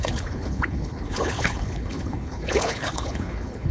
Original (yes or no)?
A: no